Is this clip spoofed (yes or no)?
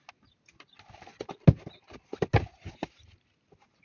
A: no